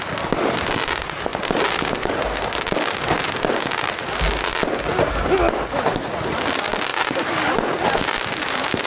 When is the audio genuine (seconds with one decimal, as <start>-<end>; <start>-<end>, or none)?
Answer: 0.0-8.9